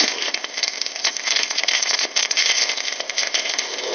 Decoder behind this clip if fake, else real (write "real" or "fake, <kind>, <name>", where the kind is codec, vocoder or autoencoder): fake, codec, ZipCodec